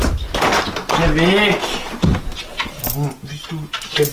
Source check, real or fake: real